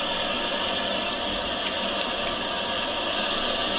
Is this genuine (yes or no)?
yes